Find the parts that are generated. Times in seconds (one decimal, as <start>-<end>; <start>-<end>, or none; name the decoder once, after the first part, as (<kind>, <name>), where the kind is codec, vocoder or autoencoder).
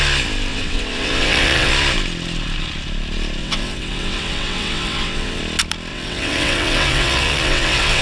0.5-1.7 (vocoder, WaveNeXt); 3.4-5.4; 5.9-8.0